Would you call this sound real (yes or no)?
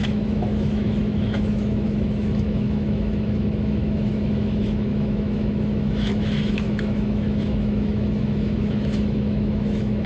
no